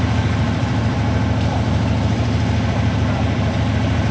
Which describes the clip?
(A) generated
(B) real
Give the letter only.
A